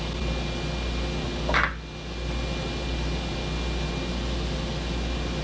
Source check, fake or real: real